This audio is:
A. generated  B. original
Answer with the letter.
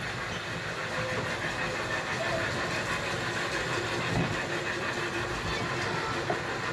B